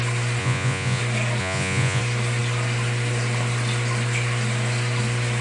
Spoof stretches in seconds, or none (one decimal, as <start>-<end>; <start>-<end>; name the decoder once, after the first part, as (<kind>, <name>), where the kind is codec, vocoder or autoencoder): 0.4-1.0 (vocoder, Vocos); 1.4-2.0